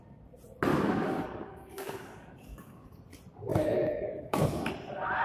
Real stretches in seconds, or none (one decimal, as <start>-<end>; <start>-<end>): 0.0-0.7; 3.0-3.5; 4.7-5.2